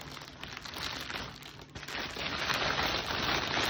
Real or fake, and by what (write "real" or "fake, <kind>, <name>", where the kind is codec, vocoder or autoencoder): real